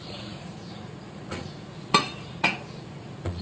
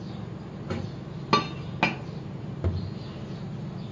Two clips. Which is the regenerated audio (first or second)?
first